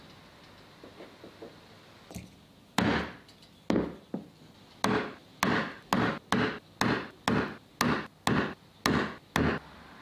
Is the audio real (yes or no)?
yes